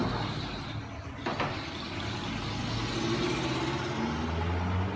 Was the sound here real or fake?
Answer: real